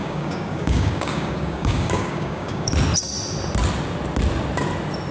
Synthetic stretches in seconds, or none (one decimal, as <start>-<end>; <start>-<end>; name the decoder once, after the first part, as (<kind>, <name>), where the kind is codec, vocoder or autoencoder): 0.0-2.7 (codec, DAC)